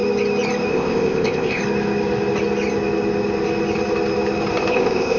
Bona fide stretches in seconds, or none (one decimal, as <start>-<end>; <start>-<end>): 0.0-0.7; 1.6-4.7